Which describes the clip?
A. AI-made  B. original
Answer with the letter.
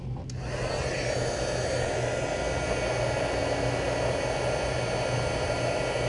B